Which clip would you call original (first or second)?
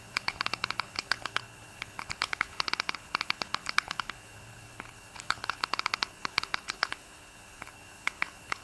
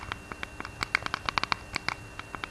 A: second